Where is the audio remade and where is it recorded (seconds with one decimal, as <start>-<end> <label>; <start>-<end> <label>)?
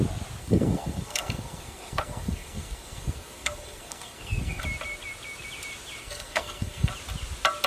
0.0-0.4 recorded; 0.4-4.6 remade; 4.6-6.0 recorded; 6.0-6.9 remade; 6.9-7.7 recorded